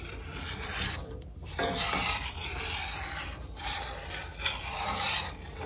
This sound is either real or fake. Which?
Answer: fake